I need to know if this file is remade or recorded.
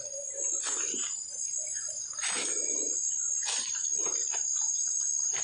recorded